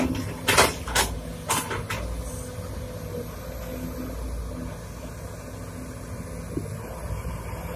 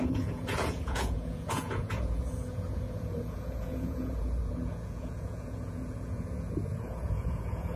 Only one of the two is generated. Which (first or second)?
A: second